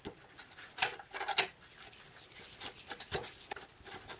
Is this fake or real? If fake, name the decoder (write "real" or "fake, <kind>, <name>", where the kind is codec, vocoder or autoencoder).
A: real